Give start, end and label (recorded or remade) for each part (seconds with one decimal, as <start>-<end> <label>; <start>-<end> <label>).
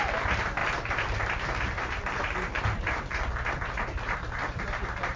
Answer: 0.0-5.2 recorded